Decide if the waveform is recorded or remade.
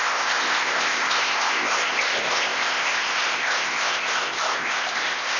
remade